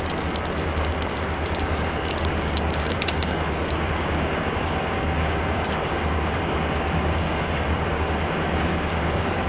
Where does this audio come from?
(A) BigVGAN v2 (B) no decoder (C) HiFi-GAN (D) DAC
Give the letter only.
D